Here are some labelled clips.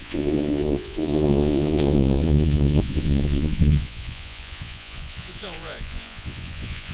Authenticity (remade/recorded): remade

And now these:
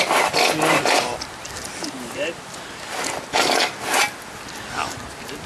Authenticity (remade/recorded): recorded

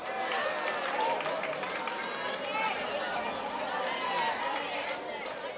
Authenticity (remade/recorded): recorded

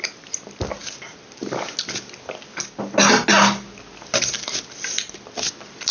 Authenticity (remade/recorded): recorded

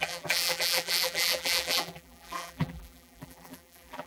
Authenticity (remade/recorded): remade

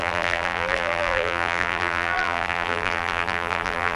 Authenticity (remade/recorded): remade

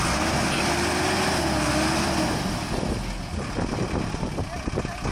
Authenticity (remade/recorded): recorded